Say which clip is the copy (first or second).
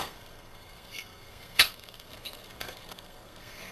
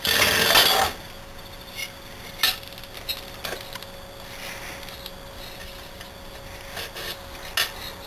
first